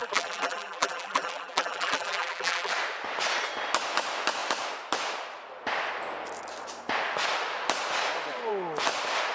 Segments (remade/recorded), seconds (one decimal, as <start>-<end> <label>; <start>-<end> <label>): 0.0-2.7 remade; 2.7-9.3 recorded